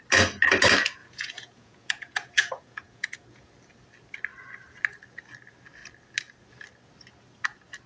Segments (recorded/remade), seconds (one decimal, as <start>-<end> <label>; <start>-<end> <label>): 0.0-1.0 recorded; 1.0-3.5 remade; 3.5-7.9 recorded